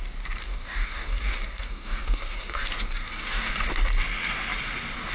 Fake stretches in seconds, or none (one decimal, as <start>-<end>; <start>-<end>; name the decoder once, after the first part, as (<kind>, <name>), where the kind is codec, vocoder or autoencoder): 0.4-3.5 (codec, DAC)